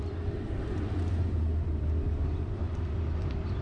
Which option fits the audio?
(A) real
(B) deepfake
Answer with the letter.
B